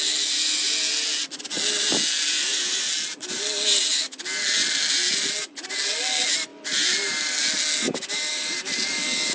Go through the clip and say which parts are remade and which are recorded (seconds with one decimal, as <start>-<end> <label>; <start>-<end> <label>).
0.0-9.3 recorded